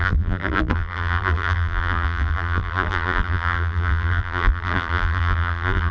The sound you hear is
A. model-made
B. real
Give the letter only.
A